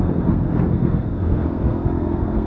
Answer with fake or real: fake